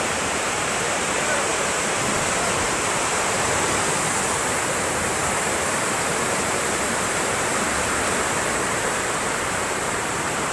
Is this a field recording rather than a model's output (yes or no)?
no